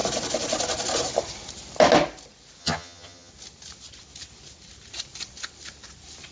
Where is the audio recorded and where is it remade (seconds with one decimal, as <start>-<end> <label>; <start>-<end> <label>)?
0.0-2.6 recorded; 2.6-3.3 remade; 3.3-6.3 recorded